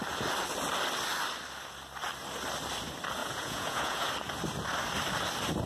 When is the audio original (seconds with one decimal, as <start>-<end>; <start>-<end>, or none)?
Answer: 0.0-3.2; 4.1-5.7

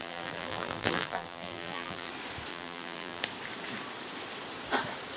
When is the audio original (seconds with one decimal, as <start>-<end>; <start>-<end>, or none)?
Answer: 2.1-2.5; 3.2-5.2

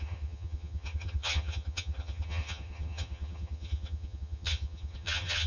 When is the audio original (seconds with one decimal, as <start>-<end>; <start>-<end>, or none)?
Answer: none

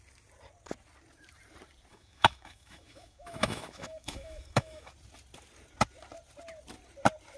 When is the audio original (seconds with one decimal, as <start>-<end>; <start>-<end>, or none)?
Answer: 0.0-1.9; 4.9-7.4

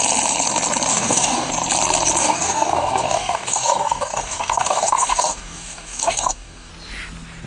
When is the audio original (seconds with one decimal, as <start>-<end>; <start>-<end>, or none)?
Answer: 0.0-0.9; 1.5-2.2; 6.7-7.5

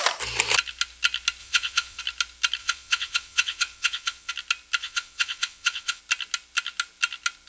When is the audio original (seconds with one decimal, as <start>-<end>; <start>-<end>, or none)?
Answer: 0.0-1.4; 2.0-2.6; 4.3-4.8; 6.0-7.5

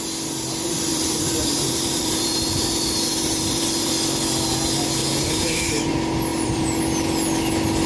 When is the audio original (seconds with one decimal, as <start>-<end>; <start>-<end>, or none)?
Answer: 0.0-0.9; 3.9-5.0; 5.7-6.3; 6.8-7.9

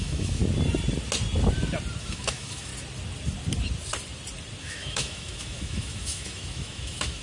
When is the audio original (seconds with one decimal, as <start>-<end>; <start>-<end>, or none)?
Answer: 0.4-2.0; 2.7-4.6